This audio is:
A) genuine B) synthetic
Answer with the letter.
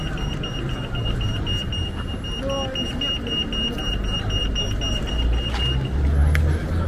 A